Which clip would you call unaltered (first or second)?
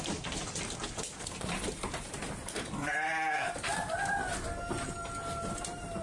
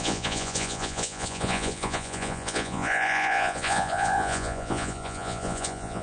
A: first